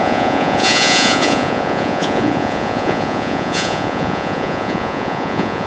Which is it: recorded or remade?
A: remade